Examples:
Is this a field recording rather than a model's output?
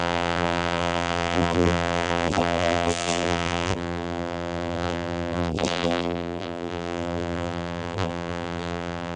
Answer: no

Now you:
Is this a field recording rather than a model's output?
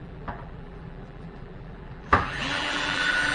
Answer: no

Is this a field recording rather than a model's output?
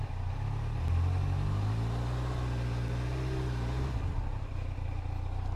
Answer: yes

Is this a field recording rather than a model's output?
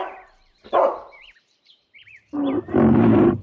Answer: no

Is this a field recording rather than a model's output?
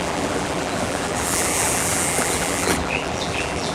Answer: no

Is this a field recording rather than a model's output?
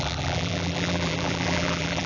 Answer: no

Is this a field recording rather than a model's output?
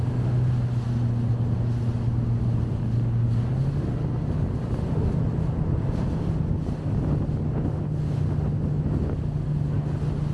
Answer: yes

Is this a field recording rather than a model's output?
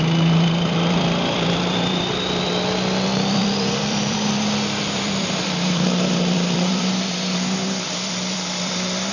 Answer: no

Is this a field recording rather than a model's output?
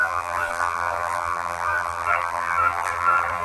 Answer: no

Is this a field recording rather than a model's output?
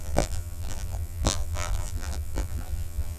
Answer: no